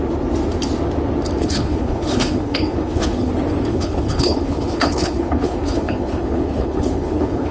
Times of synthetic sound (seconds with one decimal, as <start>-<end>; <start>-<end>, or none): 1.4-3.3; 3.7-7.5